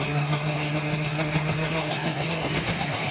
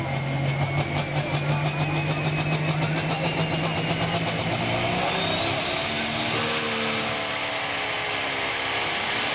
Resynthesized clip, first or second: first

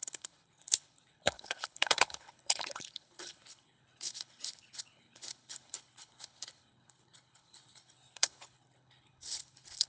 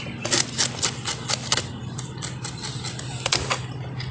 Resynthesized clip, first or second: first